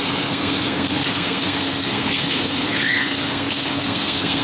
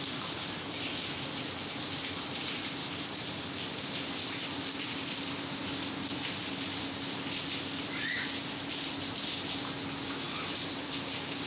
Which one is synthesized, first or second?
first